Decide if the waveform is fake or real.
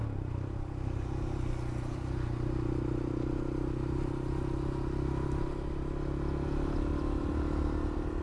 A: real